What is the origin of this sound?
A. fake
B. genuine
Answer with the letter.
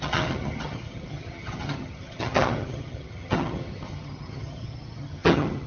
A